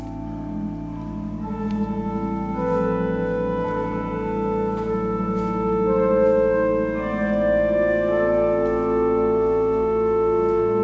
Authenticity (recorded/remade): recorded